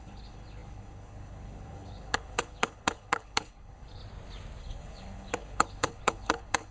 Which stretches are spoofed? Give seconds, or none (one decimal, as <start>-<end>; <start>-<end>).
0.0-4.0; 4.6-6.7